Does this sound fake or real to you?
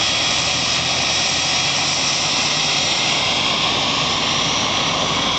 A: real